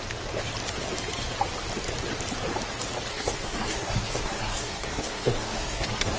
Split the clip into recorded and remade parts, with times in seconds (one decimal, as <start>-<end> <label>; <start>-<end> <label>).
0.0-3.1 recorded; 3.1-6.2 remade